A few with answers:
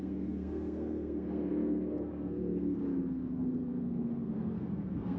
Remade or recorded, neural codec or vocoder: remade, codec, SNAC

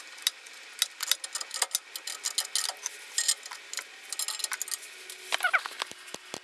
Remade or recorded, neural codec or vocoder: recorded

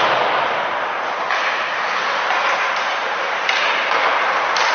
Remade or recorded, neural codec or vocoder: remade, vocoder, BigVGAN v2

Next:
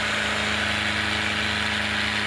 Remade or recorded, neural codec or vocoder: recorded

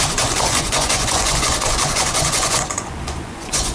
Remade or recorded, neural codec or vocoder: remade, vocoder, Vocos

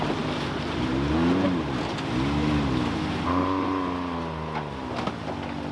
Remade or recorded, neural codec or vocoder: recorded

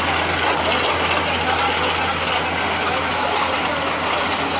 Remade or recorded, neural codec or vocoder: recorded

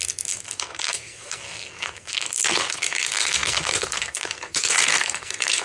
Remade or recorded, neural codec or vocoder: remade, codec, SNAC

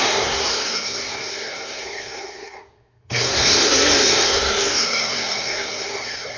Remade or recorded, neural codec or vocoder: remade, codec, SNAC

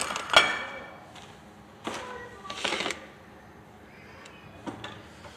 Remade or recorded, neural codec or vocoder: recorded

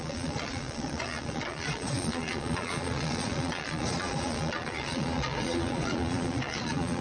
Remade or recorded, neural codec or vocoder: remade, vocoder, Vocos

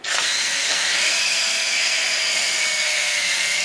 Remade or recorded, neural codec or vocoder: remade, codec, SNAC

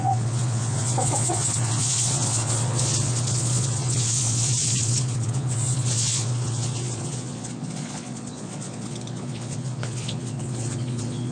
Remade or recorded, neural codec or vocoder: remade, vocoder, Vocos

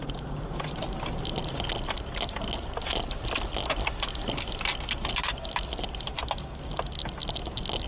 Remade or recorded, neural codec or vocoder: recorded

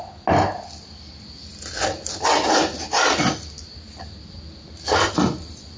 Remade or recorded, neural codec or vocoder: recorded